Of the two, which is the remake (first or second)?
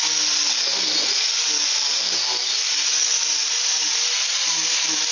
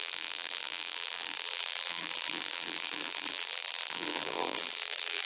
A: second